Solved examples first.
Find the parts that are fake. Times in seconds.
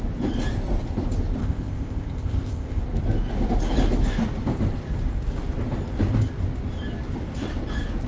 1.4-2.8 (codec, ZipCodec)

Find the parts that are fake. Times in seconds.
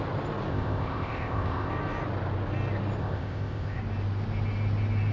0.5-1.7 (codec, ZipCodec); 3.0-3.8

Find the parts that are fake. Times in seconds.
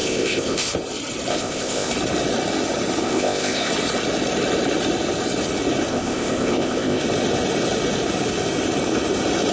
0.0-0.7 (codec, ZipCodec); 1.3-1.9; 3.0-3.7; 5.9-7.0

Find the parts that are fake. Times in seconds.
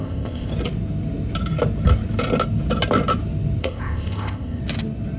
0.0-0.5 (codec, ZipCodec); 3.6-4.6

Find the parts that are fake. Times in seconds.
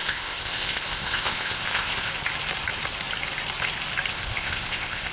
0.0-2.1 (codec, ZipCodec); 4.1-5.1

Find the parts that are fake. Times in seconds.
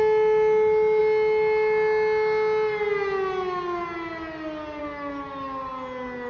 none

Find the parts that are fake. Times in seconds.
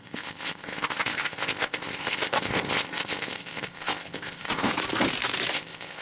0.0-4.7 (codec, ZipCodec); 5.5-6.0